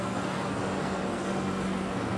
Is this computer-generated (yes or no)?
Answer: yes